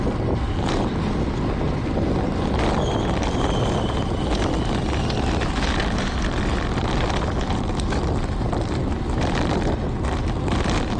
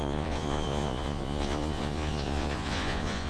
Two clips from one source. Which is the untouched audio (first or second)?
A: first